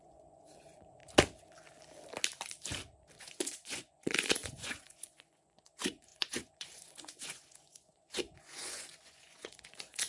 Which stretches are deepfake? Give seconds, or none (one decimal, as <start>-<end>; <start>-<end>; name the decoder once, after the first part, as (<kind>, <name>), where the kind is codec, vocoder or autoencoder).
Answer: 0.0-1.0 (vocoder, Vocos); 3.2-10.1